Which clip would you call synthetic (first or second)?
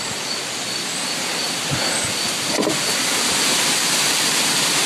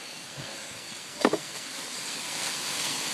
second